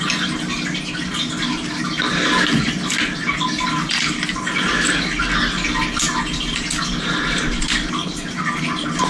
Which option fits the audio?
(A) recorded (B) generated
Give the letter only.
A